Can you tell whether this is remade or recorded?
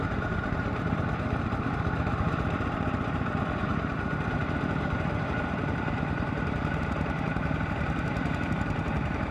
remade